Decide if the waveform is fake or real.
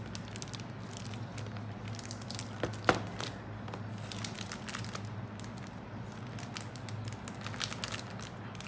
real